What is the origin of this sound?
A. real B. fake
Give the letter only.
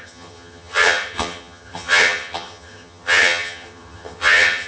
B